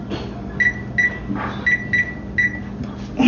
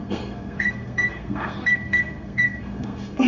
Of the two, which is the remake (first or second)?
second